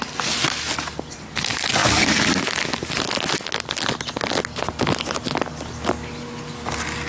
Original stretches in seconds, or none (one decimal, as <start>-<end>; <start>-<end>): 0.0-7.1